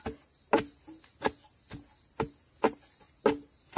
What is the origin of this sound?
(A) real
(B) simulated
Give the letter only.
A